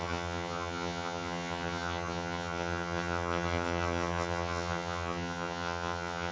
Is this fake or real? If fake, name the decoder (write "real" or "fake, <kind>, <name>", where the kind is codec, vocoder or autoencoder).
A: fake, vocoder, HiFi-GAN